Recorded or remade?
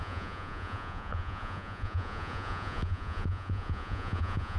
remade